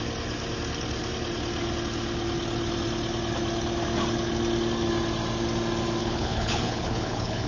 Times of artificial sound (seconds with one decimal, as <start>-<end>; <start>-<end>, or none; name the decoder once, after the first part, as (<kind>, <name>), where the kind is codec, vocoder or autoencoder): 6.0-7.5 (codec, HILCodec)